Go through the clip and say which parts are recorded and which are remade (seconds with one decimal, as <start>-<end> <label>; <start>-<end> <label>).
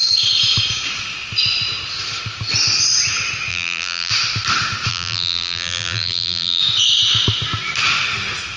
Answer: 0.0-3.5 recorded; 3.5-4.1 remade; 4.1-4.9 recorded; 4.9-6.6 remade; 6.6-8.6 recorded